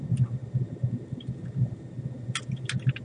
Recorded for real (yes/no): yes